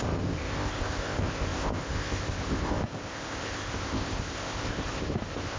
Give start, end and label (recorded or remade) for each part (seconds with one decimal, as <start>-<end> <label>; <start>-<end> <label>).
0.0-5.6 remade